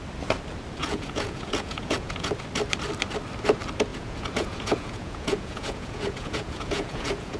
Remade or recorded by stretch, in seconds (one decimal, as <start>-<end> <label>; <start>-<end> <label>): 0.0-0.8 recorded; 0.8-2.3 remade; 2.3-3.9 recorded; 3.9-7.4 remade